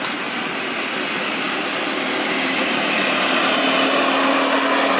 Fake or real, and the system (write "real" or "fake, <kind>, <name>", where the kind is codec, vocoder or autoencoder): real